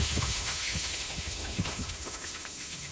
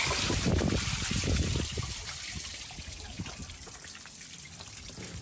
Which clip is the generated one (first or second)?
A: first